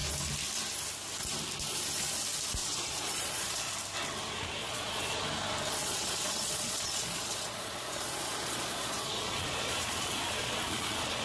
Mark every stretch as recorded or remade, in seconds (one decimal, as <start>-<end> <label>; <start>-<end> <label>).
0.0-2.6 recorded; 2.6-3.7 remade; 3.7-4.6 recorded; 4.6-5.1 remade; 5.1-5.8 recorded; 5.8-11.2 remade